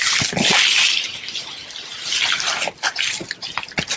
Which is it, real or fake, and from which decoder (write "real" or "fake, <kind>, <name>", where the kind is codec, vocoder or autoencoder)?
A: real